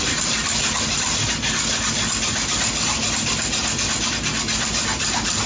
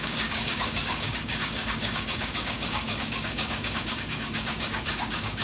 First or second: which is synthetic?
second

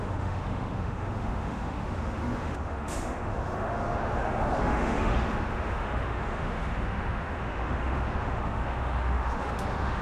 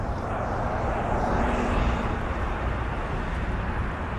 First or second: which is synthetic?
first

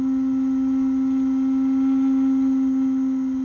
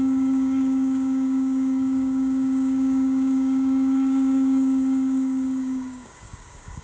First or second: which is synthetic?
second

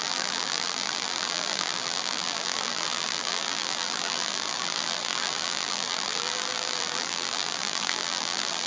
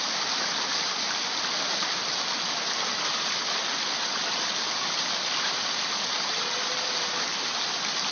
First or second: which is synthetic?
first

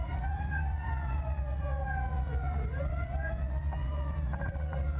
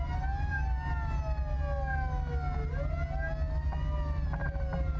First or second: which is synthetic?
first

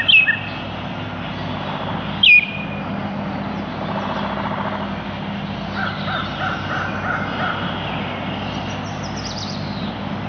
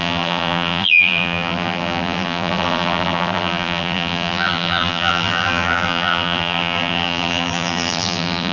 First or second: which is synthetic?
second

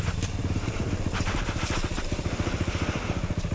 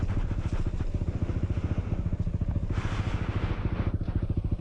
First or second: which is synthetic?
first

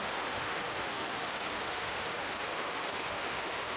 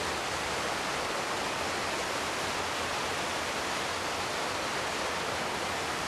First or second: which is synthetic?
first